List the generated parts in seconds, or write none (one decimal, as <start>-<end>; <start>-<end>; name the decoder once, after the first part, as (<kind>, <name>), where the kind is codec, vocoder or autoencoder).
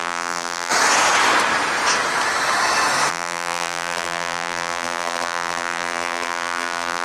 0.0-0.7 (vocoder, BigVGAN v2); 3.1-7.0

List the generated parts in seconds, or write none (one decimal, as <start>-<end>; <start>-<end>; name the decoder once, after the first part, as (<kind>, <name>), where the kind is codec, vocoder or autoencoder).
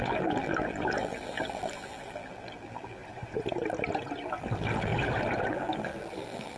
0.0-3.0 (vocoder, BigVGAN v2); 4.3-4.9; 5.5-6.6